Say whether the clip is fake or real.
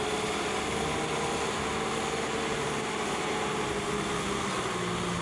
real